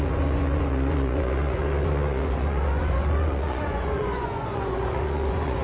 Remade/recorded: remade